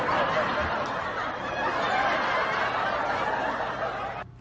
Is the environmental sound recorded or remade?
recorded